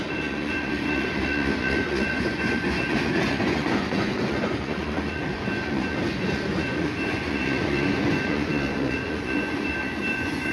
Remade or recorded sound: remade